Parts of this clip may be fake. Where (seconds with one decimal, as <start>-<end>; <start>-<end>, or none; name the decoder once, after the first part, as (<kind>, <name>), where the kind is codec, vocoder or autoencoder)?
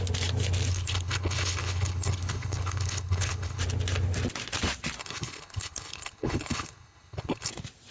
0.7-3.6 (codec, HILCodec); 5.0-7.5